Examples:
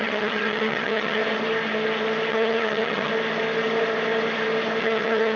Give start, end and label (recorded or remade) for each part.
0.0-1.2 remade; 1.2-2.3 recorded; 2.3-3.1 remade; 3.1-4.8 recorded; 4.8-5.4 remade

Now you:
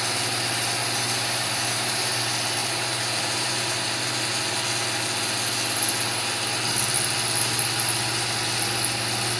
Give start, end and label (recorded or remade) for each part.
0.0-0.8 recorded; 0.8-2.2 remade; 2.2-2.6 recorded; 2.6-4.4 remade; 4.4-9.4 recorded

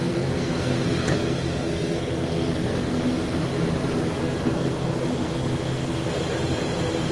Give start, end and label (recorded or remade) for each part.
0.0-3.0 remade; 3.0-4.0 recorded; 4.0-6.0 remade; 6.0-7.1 recorded

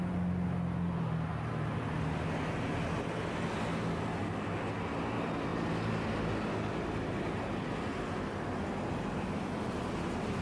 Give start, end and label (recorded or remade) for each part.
0.0-10.4 recorded

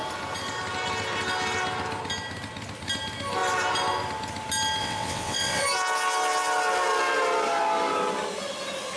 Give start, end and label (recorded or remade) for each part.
0.0-4.8 recorded; 4.8-5.6 remade; 5.6-9.0 recorded

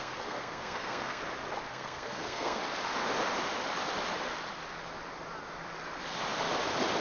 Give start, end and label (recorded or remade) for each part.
0.0-1.2 remade; 1.2-1.7 recorded; 1.7-2.6 remade; 2.6-7.0 recorded

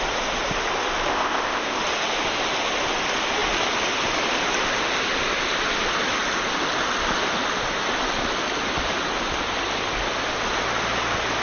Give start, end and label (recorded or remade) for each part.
0.0-1.1 recorded; 1.1-1.8 remade; 1.8-11.4 recorded